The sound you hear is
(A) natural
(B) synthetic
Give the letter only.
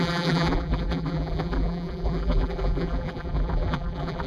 B